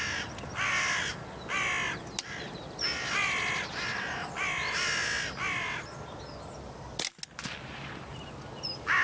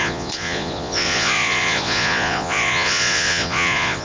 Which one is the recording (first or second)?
first